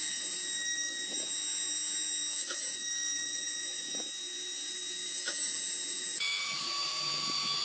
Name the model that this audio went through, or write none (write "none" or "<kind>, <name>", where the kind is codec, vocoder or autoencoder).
autoencoder, DAC-VAE